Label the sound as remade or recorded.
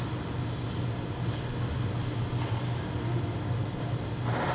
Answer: recorded